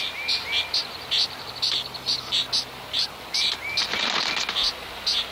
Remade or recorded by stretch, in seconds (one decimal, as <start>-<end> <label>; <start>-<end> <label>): 0.0-0.8 recorded; 0.8-4.0 remade; 4.0-5.3 recorded